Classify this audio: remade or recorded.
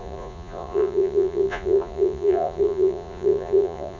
remade